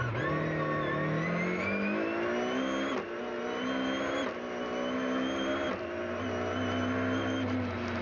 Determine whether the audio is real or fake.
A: real